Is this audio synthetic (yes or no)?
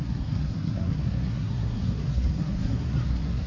yes